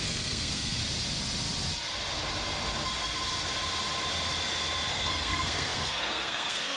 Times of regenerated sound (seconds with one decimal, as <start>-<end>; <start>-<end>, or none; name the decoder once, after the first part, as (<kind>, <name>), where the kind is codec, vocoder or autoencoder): 0.0-0.8 (codec, SNAC); 4.9-6.8